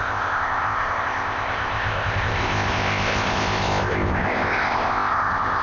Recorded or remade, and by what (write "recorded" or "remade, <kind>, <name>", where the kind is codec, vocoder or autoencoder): remade, codec, ZipCodec